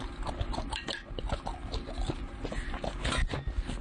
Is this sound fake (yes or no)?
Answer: no